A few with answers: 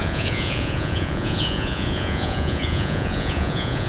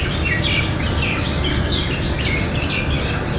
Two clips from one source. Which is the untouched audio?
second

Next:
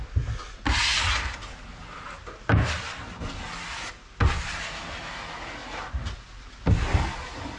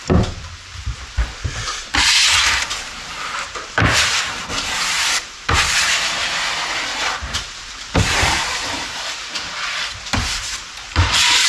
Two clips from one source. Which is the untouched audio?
first